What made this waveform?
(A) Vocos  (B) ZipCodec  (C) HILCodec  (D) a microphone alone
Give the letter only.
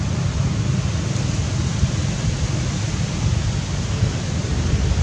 D